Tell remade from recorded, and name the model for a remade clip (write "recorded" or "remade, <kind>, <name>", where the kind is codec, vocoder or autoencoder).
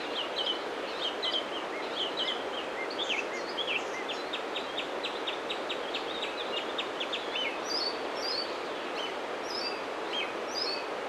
recorded